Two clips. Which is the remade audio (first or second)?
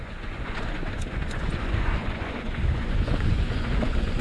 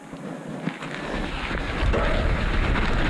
first